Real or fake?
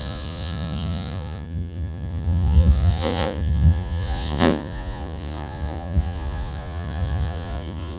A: fake